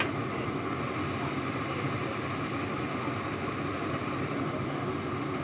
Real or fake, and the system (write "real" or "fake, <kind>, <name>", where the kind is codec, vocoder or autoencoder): real